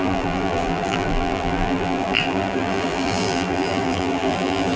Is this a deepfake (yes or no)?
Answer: yes